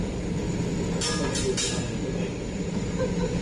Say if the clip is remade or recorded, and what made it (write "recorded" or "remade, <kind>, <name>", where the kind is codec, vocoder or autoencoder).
recorded